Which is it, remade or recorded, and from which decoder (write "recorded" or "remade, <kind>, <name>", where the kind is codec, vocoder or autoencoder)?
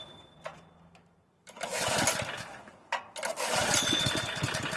recorded